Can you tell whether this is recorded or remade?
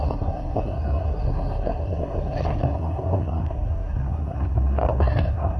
remade